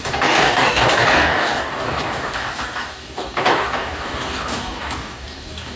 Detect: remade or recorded remade